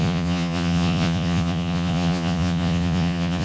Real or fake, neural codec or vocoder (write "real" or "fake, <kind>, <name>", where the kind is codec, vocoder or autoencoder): fake, vocoder, Vocos